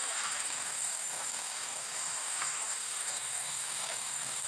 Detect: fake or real fake